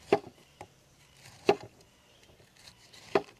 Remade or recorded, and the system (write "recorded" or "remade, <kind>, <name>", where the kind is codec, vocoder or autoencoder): remade, vocoder, BigVGAN v2